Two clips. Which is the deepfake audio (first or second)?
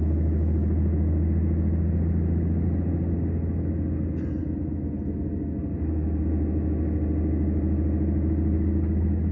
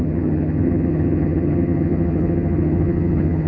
second